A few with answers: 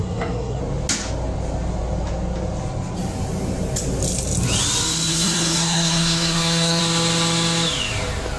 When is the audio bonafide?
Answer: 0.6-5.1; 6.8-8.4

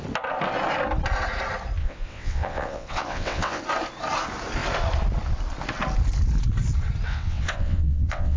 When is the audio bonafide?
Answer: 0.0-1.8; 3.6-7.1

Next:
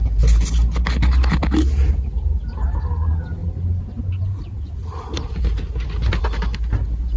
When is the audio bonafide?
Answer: 0.0-7.2

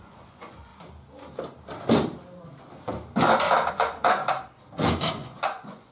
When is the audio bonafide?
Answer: 0.7-3.7; 4.2-5.1

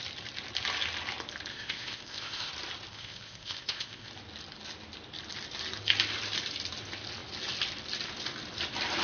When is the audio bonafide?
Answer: 0.0-1.5; 2.5-2.9; 4.1-9.0